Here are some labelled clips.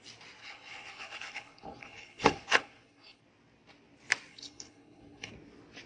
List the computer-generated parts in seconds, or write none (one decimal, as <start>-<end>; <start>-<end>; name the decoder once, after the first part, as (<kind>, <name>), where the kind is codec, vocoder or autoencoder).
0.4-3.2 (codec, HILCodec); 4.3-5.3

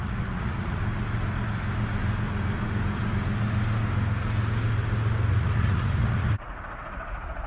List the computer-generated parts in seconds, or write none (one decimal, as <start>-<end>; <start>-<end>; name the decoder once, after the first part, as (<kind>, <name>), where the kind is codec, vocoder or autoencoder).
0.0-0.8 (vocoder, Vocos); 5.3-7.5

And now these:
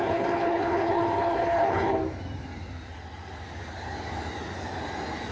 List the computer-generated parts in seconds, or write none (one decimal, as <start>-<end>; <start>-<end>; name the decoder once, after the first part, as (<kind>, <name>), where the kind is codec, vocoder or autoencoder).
0.0-2.0 (codec, HILCodec)